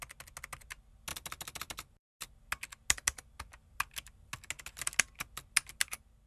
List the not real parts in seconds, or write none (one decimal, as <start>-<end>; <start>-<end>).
none